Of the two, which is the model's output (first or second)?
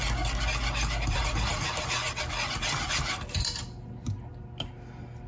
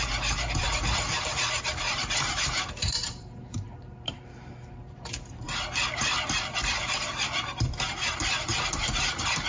second